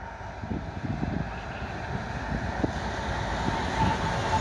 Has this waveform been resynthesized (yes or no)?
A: no